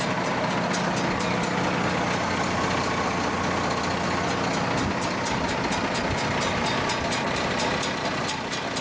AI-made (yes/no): no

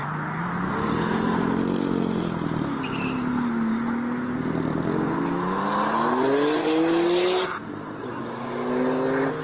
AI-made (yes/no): no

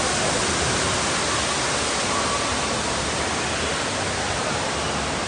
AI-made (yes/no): no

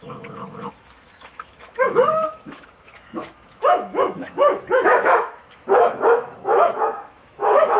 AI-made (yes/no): yes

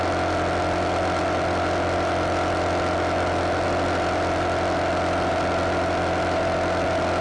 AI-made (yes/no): no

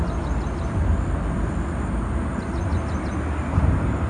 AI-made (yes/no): no